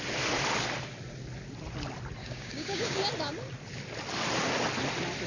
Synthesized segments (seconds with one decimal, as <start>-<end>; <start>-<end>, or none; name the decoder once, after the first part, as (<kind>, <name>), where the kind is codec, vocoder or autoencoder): 2.2-3.0 (codec, DAC)